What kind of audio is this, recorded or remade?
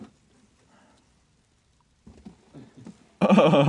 recorded